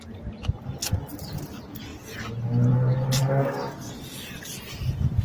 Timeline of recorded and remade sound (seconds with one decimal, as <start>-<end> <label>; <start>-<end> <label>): 0.0-3.2 recorded; 3.2-3.9 remade; 3.9-5.2 recorded